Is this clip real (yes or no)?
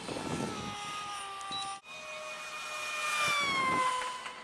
yes